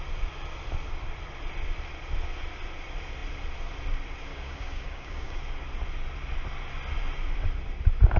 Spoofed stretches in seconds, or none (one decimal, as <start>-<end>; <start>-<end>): 4.3-5.4